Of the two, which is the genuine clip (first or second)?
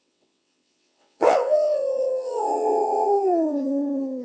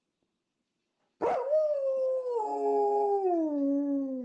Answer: second